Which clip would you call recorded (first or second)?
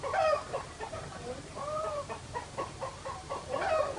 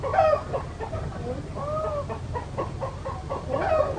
second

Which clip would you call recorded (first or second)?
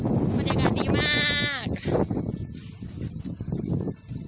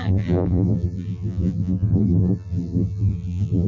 first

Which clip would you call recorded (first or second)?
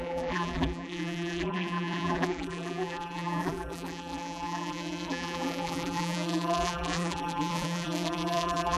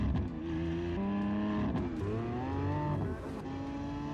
second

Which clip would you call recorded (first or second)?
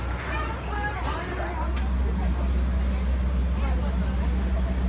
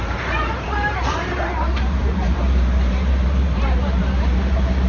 first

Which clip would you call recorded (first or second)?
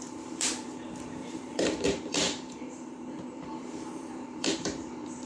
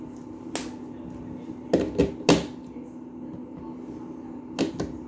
second